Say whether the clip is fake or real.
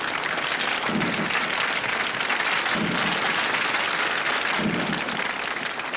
real